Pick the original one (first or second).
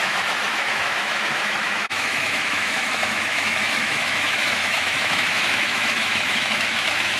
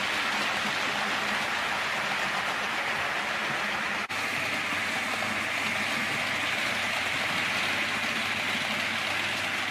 second